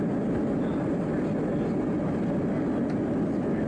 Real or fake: real